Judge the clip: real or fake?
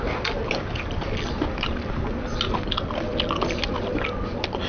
real